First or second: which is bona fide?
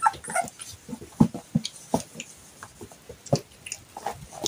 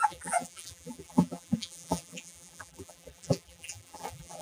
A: first